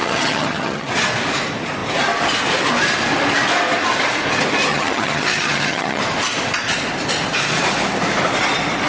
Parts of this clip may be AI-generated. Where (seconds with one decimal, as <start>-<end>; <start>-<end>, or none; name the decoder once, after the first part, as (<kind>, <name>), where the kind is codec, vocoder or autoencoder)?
0.0-0.9 (vocoder, HiFi-GAN); 4.7-6.0